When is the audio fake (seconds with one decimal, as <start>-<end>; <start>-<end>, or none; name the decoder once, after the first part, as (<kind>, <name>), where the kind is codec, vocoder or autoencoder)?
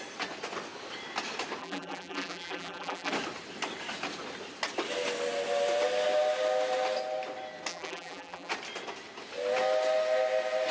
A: 1.6-3.1 (vocoder, BigVGAN v2); 7.7-8.5